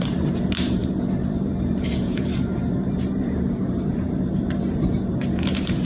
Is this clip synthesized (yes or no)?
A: yes